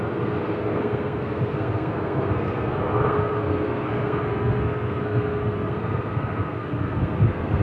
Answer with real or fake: fake